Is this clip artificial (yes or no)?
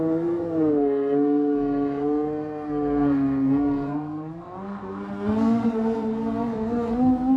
yes